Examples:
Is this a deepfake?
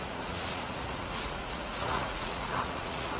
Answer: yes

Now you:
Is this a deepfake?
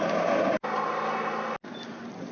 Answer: no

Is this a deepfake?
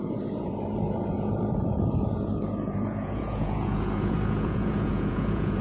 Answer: yes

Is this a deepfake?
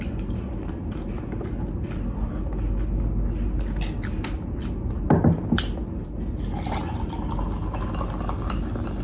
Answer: no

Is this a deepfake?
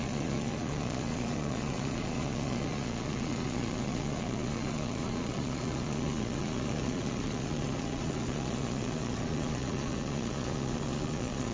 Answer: yes